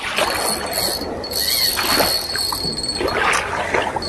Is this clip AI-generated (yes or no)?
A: no